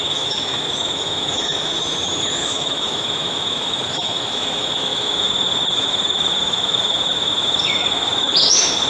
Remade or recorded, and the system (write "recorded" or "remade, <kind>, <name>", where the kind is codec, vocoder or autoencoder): remade, autoencoder, DAC-VAE